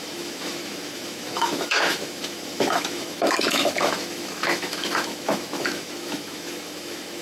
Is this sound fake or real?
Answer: fake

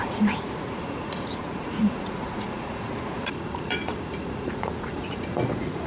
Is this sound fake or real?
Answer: fake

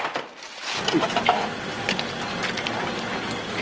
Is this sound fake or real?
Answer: real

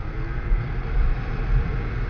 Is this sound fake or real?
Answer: fake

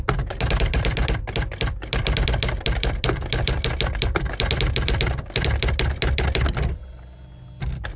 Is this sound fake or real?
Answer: real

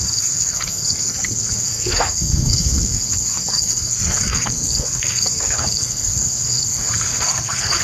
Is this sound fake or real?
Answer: fake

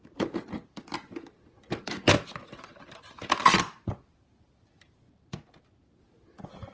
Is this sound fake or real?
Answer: real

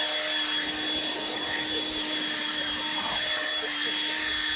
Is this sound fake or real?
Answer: real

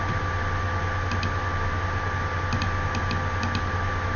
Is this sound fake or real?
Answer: real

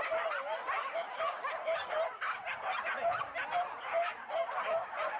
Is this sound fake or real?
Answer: real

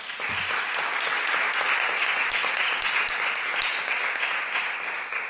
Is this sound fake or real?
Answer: real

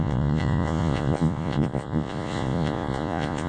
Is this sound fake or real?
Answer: fake